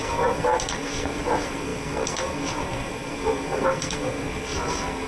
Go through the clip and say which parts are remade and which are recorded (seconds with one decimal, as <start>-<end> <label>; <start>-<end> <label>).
0.0-5.1 remade